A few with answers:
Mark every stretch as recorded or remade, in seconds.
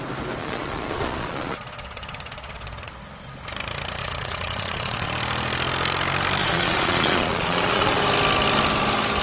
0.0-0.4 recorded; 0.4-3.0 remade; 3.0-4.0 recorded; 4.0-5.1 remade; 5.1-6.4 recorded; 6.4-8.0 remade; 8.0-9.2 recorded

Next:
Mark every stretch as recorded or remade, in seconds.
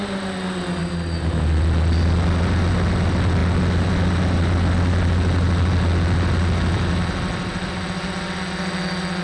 0.0-9.2 recorded